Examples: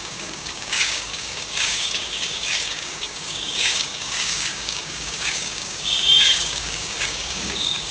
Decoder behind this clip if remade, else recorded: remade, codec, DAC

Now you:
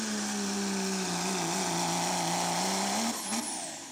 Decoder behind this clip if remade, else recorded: recorded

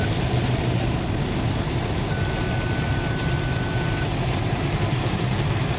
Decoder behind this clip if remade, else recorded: recorded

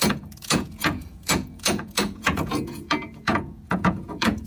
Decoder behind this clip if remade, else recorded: remade, vocoder, Vocos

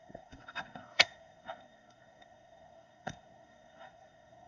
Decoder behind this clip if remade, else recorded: remade, codec, SNAC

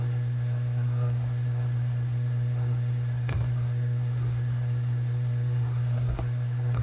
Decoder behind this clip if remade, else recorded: remade, codec, SNAC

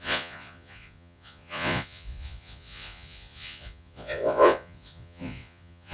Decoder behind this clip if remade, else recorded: remade, vocoder, Vocos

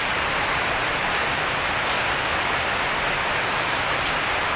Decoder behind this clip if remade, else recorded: recorded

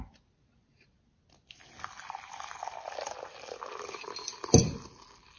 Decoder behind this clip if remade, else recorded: recorded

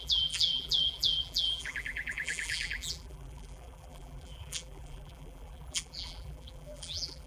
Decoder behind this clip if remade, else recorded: remade, vocoder, BigVGAN v2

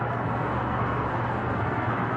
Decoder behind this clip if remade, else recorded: remade, codec, SNAC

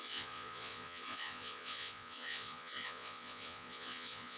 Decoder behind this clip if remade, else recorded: remade, vocoder, Vocos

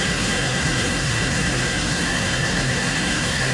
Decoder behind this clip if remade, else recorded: remade, codec, SNAC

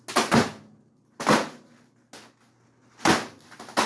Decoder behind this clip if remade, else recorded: recorded